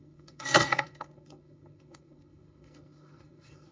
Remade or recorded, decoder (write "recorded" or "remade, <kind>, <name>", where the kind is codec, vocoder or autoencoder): remade, codec, SNAC